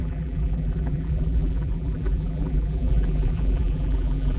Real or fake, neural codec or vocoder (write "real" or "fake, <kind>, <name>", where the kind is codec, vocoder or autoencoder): fake, vocoder, BigVGAN v2